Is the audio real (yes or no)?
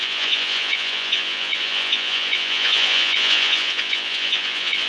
no